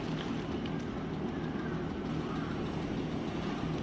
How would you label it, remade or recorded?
recorded